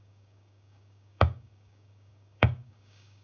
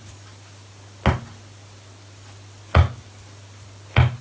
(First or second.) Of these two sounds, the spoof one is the first